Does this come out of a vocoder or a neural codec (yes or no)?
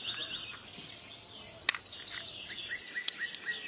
no